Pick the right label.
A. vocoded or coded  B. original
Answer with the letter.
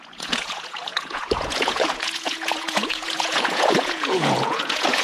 A